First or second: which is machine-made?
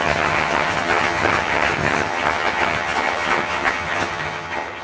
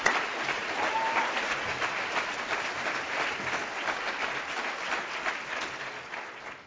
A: first